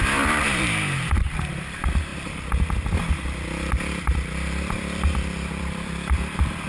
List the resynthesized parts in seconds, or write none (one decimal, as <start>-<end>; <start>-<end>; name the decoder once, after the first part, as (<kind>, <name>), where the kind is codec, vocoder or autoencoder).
0.0-6.7 (vocoder, BigVGAN v2)